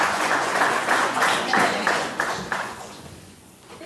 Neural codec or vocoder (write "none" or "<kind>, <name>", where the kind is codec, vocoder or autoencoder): vocoder, Vocos